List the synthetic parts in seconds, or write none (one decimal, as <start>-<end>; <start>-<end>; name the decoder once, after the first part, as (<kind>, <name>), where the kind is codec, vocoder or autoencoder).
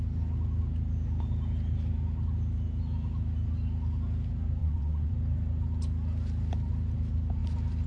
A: 4.6-5.1 (vocoder, WaveNeXt)